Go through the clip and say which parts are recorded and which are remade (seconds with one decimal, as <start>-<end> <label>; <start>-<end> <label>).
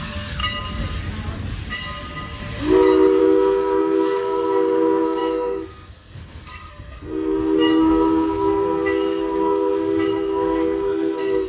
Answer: 0.0-0.4 remade; 0.4-3.2 recorded; 3.2-11.5 remade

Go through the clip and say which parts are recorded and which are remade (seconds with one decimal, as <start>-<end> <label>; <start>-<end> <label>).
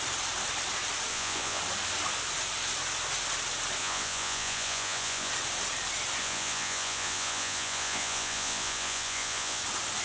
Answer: 0.0-1.1 recorded; 1.1-1.6 remade; 1.6-3.8 recorded; 3.8-5.3 remade; 5.3-6.2 recorded; 6.2-9.6 remade; 9.6-10.0 recorded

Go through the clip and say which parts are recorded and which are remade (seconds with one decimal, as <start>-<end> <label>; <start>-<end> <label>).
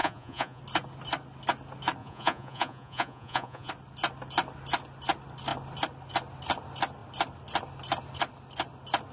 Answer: 0.0-0.6 remade; 0.6-2.0 recorded; 2.0-3.7 remade; 3.7-9.1 recorded